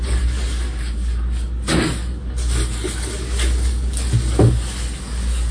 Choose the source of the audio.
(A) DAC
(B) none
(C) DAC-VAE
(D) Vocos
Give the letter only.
A